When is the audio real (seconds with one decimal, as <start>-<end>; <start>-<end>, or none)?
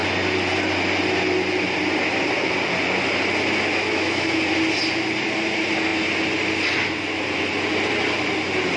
0.0-3.8; 4.5-8.8